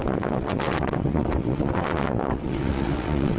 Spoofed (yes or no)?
yes